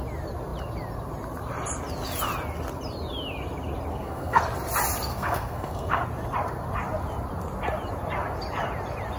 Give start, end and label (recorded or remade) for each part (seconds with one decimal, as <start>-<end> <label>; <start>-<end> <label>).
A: 0.0-3.9 recorded; 3.9-4.4 remade; 4.4-5.1 recorded; 5.1-6.0 remade; 6.0-9.2 recorded